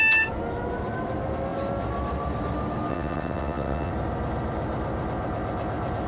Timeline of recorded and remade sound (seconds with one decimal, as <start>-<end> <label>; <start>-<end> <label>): 0.0-2.9 recorded; 2.9-3.9 remade; 3.9-6.1 recorded